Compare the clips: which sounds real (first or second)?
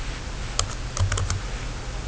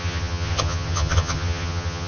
first